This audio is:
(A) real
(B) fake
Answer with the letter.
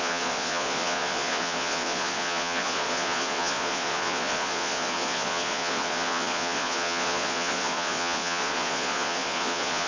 B